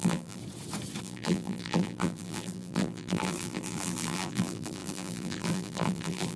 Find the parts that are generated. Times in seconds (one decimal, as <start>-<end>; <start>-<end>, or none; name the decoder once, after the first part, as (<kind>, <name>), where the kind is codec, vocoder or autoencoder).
0.0-0.4 (vocoder, BigVGAN v2); 1.0-6.4